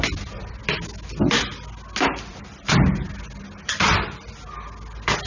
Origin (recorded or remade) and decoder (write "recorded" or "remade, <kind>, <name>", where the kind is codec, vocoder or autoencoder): recorded